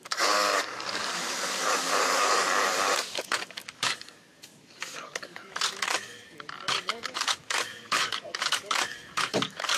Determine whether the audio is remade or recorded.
remade